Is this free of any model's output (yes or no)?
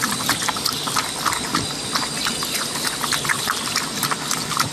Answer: yes